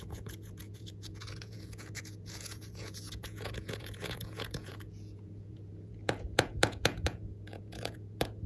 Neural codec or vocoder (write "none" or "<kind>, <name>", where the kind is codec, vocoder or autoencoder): vocoder, Vocos